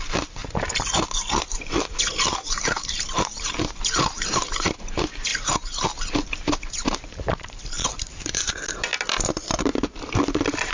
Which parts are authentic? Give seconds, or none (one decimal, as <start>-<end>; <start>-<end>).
0.4-1.4; 5.3-6.1; 8.9-9.6